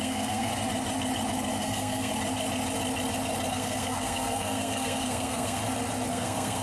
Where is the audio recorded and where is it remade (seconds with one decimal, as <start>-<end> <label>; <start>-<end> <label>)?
0.0-0.5 remade; 0.5-1.6 recorded; 1.6-2.1 remade; 2.1-3.5 recorded; 3.5-5.6 remade; 5.6-6.1 recorded; 6.1-6.6 remade